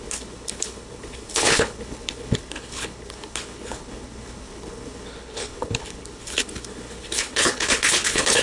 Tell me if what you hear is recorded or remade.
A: remade